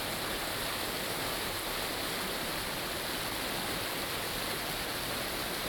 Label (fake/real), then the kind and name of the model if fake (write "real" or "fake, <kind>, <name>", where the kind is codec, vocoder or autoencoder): real